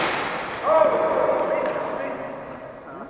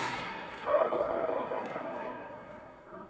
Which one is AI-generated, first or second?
second